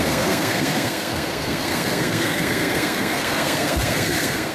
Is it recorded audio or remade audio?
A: remade